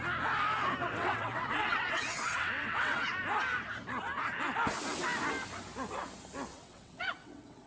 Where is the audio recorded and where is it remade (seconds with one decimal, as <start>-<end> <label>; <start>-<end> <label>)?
0.0-0.8 recorded; 0.8-3.2 remade; 3.2-6.5 recorded; 6.5-7.7 remade